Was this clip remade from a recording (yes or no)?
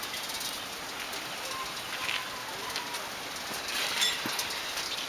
no